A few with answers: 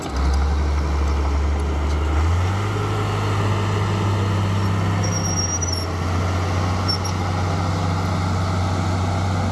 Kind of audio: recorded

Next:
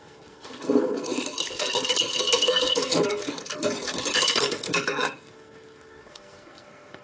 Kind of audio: remade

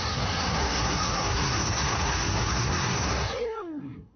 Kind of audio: remade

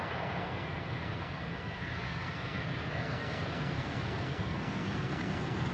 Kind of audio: remade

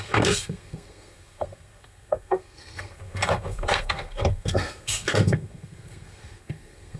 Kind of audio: remade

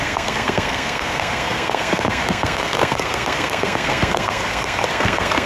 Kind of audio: remade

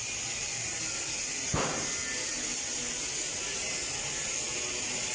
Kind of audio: recorded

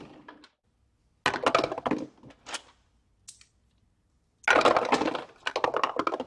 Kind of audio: recorded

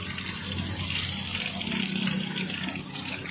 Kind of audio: recorded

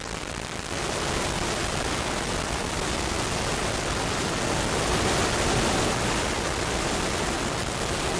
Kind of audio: recorded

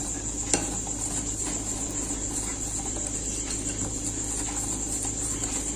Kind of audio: recorded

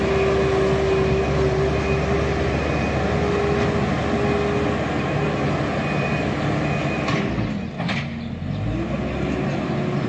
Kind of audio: recorded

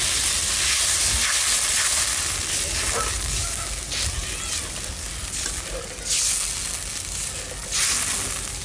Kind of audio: recorded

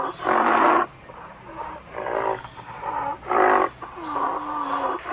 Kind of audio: recorded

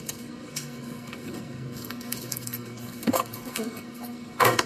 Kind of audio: remade